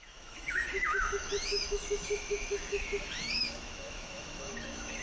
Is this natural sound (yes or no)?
no